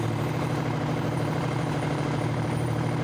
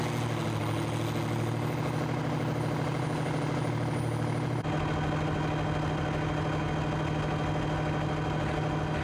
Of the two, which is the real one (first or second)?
second